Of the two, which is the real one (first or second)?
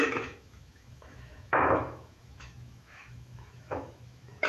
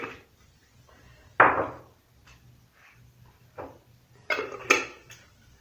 second